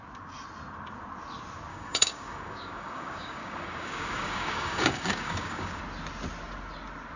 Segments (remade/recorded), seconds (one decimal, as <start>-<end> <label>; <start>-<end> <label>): 0.0-1.7 recorded; 1.7-5.8 remade; 5.8-7.2 recorded